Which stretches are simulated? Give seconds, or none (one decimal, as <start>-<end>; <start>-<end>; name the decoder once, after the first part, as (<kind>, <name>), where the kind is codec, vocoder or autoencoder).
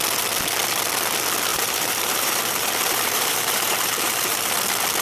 1.5-4.5 (vocoder, BigVGAN v2)